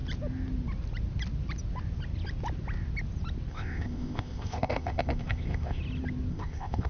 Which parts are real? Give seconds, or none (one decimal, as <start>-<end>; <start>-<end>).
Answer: 0.0-3.5; 5.8-6.3